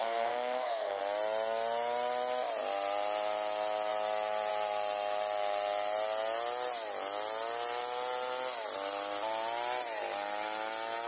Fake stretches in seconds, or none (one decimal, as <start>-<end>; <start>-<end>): 0.0-1.0